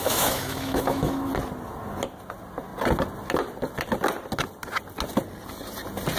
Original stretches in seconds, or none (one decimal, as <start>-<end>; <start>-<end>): 1.3-6.2